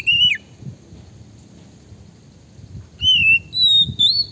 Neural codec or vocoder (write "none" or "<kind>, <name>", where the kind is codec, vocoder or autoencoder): none